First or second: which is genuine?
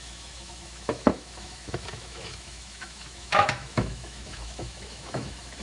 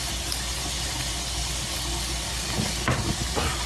second